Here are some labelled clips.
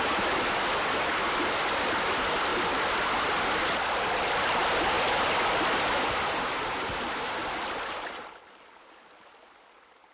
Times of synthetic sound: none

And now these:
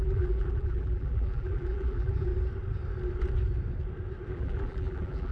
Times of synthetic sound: 0.0-2.3 (vocoder, BigVGAN v2); 4.3-5.3

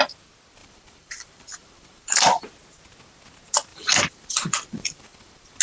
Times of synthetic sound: 0.6-2.5 (vocoder, BigVGAN v2); 3.7-5.6

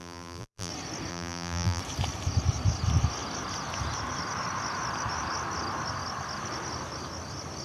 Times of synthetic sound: 0.0-0.7 (vocoder, BigVGAN v2); 1.1-1.8

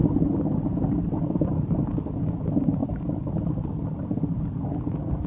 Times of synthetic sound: none

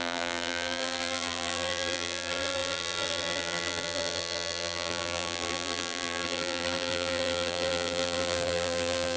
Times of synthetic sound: 0.0-9.2 (vocoder, BigVGAN v2)